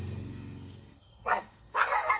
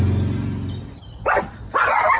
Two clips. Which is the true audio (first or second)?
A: second